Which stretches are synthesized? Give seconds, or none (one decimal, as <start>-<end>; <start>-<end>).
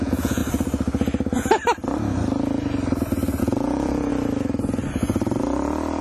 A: 0.0-0.4; 3.4-4.1